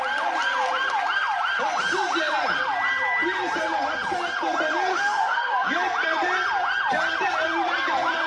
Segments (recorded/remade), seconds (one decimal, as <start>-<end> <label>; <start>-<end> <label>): 0.0-4.9 recorded; 4.9-5.7 remade; 5.7-8.3 recorded